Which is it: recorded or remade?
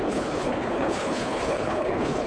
remade